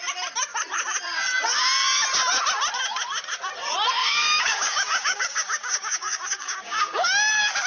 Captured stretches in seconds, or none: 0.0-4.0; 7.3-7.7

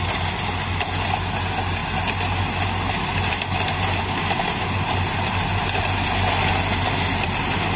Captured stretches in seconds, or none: 0.0-7.8

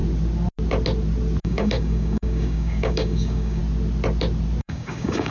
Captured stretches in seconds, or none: 0.0-1.4; 3.6-4.6